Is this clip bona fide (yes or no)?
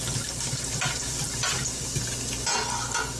yes